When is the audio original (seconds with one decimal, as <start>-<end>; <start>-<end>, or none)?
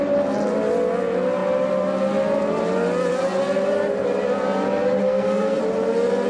0.0-5.0; 5.6-6.3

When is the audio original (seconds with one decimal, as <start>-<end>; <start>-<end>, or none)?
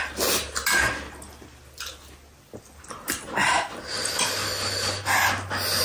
0.0-5.8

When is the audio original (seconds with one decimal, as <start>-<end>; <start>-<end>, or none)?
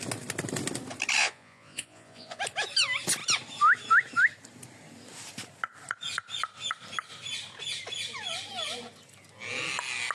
0.0-1.2; 2.4-10.1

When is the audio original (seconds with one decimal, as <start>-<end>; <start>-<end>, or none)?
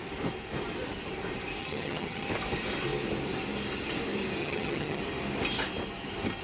0.0-1.6; 2.3-4.4; 5.0-6.4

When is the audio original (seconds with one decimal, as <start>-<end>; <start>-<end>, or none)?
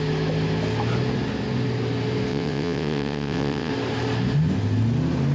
0.0-2.3; 3.7-5.3